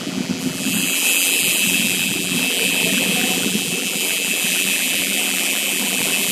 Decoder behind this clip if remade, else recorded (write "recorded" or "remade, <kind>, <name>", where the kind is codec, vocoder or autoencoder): remade, vocoder, BigVGAN v2